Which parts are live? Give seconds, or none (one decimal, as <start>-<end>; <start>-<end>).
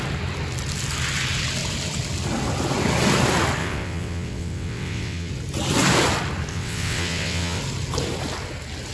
0.0-3.6; 5.3-6.5; 7.6-8.9